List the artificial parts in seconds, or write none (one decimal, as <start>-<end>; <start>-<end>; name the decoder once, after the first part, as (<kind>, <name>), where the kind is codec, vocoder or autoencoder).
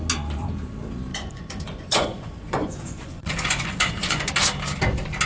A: 1.1-4.3 (vocoder, Vocos)